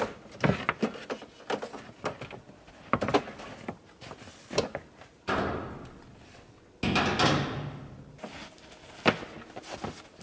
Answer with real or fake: real